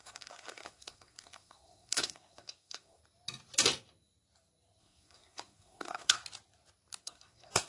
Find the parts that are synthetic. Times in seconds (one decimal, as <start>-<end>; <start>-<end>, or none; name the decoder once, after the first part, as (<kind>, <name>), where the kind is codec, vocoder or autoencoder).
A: 0.0-3.0 (codec, SNAC); 4.8-6.2; 7.0-7.7